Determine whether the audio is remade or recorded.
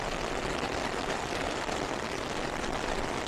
recorded